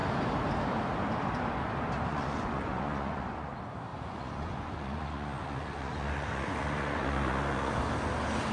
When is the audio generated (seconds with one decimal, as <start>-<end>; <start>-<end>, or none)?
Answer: 2.1-3.5; 3.9-7.7